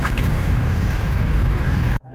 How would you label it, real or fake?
fake